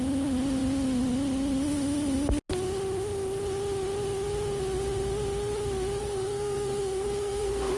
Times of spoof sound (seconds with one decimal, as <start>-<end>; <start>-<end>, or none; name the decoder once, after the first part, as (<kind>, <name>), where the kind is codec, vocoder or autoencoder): 6.0-7.8 (codec, SNAC)